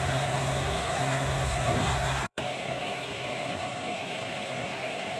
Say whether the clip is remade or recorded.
remade